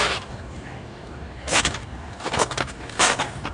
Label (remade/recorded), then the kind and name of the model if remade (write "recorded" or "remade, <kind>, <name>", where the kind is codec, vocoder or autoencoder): remade, codec, DAC